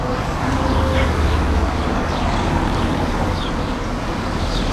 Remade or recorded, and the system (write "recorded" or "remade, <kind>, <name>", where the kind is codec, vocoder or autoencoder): remade, codec, DAC